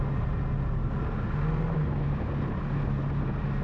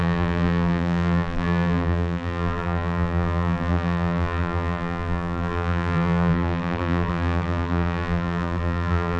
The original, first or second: first